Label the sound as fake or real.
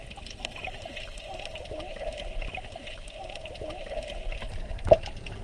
real